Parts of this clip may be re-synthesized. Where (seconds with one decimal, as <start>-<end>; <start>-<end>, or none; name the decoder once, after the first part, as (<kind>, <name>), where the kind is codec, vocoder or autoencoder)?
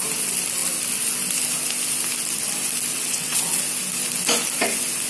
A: 2.9-3.6 (vocoder, WaveNeXt)